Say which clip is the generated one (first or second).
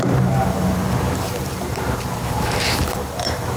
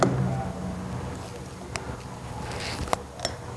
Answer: first